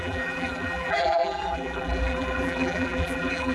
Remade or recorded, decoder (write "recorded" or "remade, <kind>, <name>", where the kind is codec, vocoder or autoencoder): remade, vocoder, BigVGAN v2